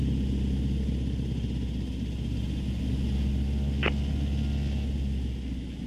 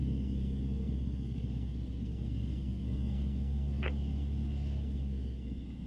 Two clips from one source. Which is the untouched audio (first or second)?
first